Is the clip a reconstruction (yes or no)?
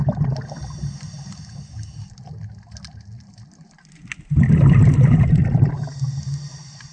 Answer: no